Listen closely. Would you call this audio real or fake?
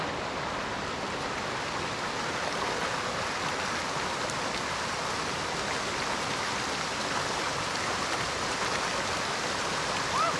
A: real